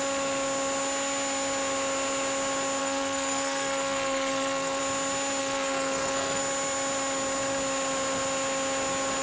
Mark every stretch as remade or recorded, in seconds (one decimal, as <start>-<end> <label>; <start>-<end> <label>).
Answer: 0.0-2.8 recorded; 2.8-4.8 remade; 4.8-5.4 recorded; 5.4-6.4 remade; 6.4-9.2 recorded